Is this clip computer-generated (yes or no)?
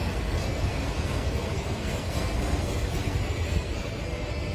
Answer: yes